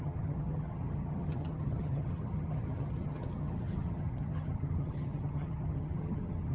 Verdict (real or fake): fake